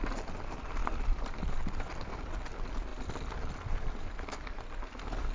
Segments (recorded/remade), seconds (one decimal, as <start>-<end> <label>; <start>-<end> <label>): 0.0-5.3 recorded